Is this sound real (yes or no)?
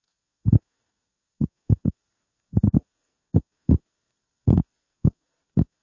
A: no